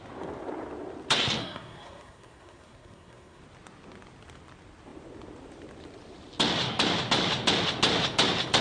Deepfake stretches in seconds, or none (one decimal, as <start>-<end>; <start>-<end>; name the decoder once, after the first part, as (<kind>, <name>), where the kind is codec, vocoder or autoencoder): 1.4-3.4 (codec, SNAC)